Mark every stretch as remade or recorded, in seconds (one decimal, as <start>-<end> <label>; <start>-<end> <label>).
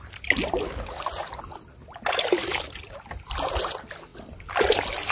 0.0-5.1 recorded